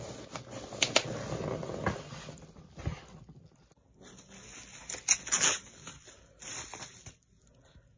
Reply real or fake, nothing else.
real